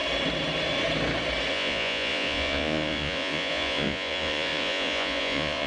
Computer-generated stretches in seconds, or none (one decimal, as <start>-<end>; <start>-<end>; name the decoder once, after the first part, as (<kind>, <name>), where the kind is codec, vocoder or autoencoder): 1.5-5.7 (vocoder, Vocos)